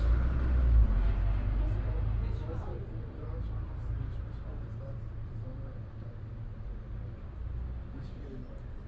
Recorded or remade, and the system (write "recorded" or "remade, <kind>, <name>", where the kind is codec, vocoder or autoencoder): recorded